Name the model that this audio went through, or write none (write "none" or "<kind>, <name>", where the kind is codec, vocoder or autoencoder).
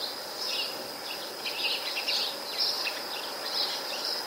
none